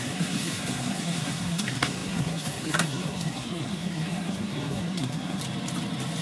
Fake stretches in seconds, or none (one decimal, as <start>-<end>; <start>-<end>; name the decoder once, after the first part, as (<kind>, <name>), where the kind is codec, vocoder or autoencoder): 0.0-5.4 (codec, SNAC)